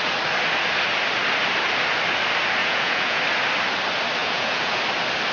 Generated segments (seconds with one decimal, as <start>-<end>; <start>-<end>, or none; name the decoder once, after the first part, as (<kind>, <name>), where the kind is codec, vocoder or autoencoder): 2.6-3.2 (vocoder, Vocos); 4.2-4.8